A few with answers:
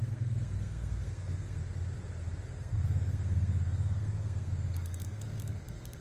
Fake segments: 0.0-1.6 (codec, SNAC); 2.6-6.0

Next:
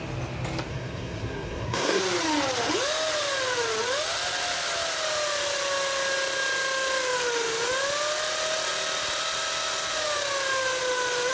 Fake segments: 0.7-2.0 (codec, SNAC)